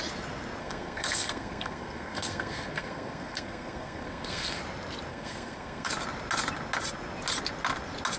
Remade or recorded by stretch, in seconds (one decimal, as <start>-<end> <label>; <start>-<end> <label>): 0.0-0.6 recorded; 0.6-4.6 remade; 4.6-5.1 recorded; 5.1-5.9 remade; 5.9-8.2 recorded